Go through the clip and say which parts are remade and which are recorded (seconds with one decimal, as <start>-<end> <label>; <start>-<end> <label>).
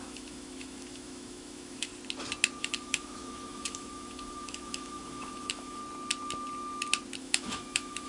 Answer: 0.0-1.9 remade; 1.9-2.6 recorded; 2.6-5.8 remade; 5.8-7.2 recorded; 7.2-8.1 remade